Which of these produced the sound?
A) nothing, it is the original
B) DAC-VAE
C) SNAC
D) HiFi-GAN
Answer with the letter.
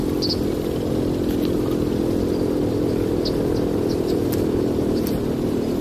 A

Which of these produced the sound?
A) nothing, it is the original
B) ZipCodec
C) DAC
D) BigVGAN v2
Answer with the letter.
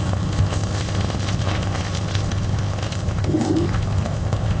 B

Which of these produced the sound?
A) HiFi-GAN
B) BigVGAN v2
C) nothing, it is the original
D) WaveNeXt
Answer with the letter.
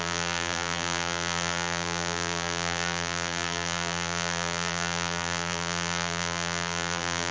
B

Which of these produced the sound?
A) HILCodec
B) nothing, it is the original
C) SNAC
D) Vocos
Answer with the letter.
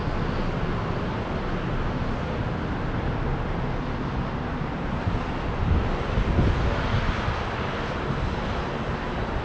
B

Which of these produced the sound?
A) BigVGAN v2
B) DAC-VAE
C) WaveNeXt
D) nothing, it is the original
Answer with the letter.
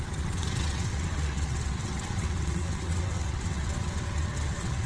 C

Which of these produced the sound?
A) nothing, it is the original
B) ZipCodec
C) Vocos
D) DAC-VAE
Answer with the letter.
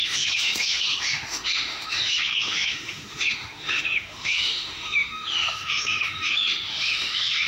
D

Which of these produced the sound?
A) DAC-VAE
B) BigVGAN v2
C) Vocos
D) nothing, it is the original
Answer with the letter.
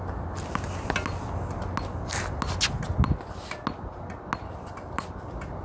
D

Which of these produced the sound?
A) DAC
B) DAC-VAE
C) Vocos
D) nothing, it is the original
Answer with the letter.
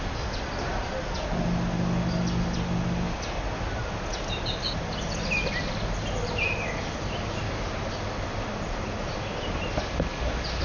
D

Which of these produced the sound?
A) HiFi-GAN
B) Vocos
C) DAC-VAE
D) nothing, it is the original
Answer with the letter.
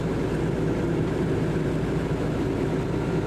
D